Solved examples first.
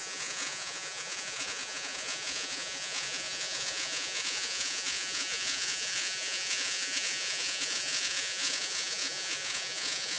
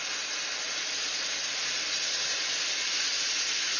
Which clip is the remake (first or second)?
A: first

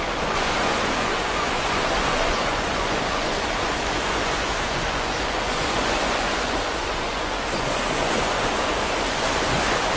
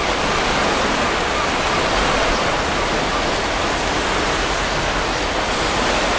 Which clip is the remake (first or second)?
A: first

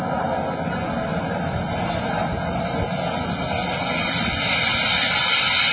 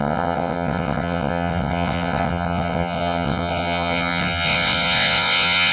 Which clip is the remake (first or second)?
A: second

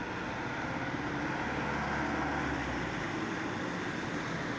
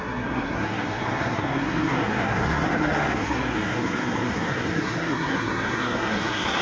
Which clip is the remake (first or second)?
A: second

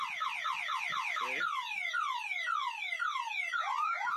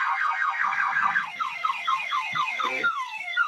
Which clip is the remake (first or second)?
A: second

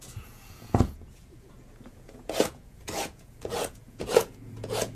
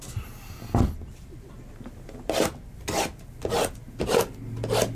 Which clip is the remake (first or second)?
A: first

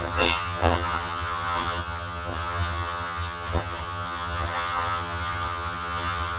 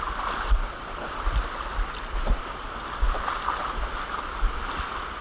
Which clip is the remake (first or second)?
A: first